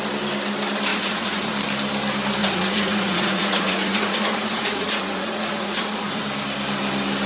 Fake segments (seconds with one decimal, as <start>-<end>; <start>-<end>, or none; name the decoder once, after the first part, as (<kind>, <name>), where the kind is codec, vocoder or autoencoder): 0.9-1.5 (vocoder, Vocos); 2.4-6.2